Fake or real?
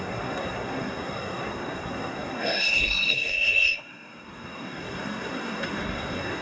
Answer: fake